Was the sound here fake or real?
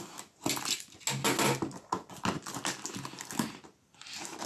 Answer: real